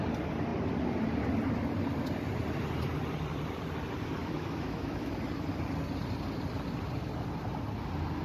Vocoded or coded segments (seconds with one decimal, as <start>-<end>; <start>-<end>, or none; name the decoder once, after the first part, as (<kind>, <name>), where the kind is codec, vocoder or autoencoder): 4.2-5.1 (autoencoder, DAC-VAE)